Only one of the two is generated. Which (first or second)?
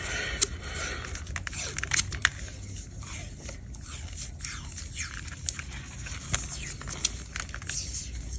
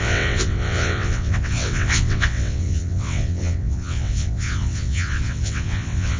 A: second